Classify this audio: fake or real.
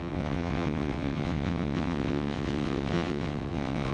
fake